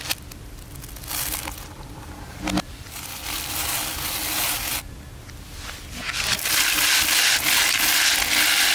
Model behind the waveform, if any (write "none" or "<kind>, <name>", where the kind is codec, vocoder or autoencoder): none